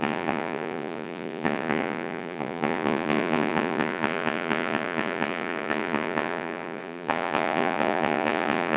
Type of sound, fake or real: fake